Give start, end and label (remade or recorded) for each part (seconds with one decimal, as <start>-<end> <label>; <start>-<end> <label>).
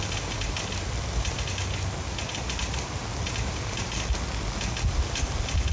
0.0-5.7 recorded